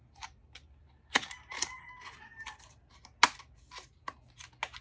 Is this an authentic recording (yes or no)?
yes